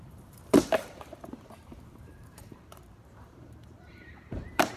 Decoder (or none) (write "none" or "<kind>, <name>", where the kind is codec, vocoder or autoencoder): vocoder, BigVGAN v2